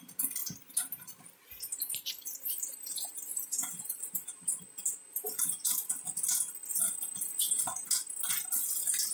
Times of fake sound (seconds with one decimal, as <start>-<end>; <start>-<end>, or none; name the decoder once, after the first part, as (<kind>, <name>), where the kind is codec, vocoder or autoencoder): 0.4-4.6 (vocoder, BigVGAN v2); 5.2-5.8; 7.3-7.9